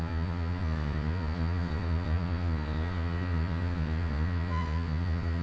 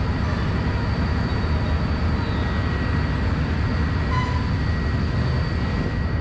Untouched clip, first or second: second